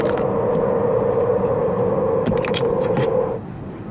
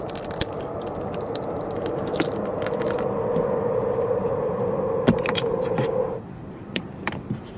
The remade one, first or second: second